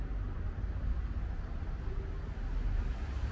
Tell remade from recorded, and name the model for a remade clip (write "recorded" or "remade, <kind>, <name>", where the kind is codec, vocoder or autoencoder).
recorded